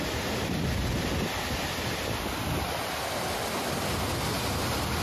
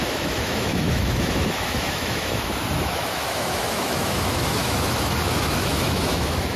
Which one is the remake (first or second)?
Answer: second